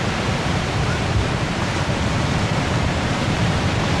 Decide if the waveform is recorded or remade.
remade